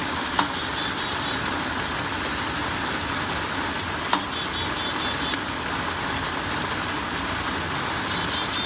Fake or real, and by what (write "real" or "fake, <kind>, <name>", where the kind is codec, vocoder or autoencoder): real